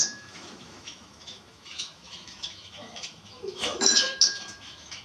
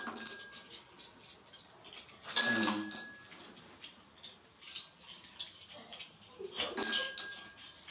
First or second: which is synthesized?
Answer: first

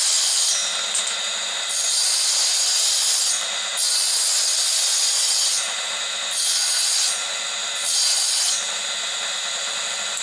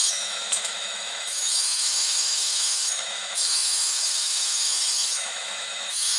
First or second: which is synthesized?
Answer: second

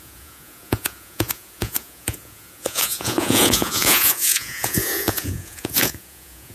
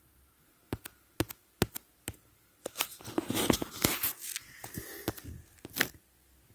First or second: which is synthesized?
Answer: first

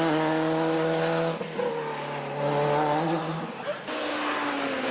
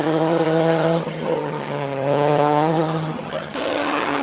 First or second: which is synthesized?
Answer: second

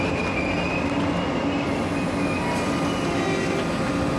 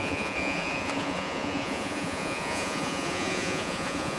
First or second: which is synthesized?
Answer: second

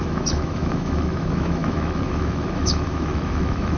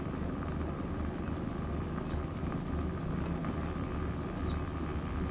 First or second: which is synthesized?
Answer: first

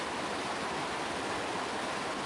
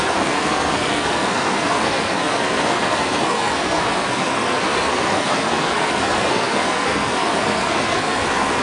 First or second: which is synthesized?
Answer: second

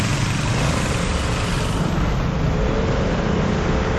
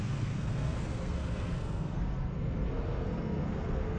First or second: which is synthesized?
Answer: second